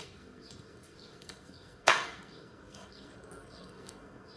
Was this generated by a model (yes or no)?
yes